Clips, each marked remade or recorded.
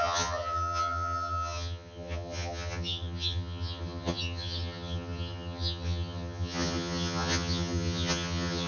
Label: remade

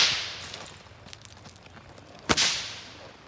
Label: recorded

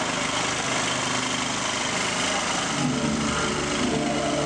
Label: recorded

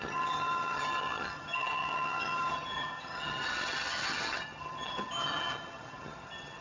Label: remade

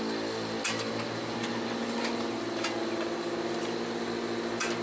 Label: recorded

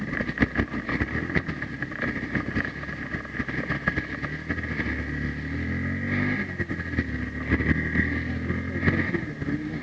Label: recorded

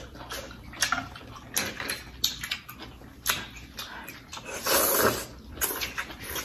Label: recorded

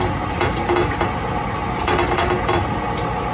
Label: recorded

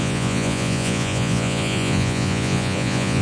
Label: remade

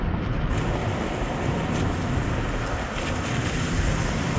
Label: recorded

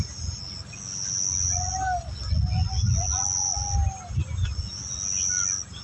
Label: recorded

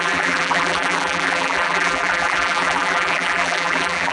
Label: remade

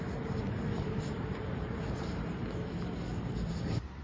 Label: remade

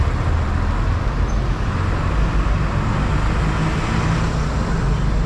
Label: recorded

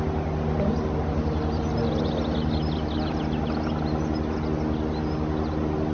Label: recorded